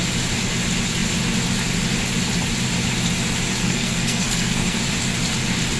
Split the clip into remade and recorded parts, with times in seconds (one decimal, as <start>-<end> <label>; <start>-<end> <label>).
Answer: 0.0-3.6 recorded; 3.6-4.8 remade; 4.8-5.8 recorded